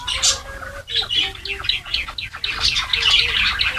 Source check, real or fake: real